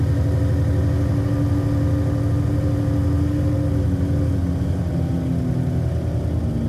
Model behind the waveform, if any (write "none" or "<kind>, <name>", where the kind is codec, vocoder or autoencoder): none